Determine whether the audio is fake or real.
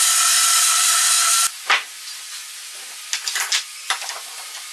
real